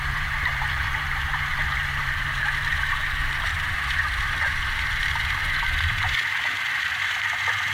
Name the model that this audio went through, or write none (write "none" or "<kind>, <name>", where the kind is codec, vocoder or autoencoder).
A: vocoder, BigVGAN v2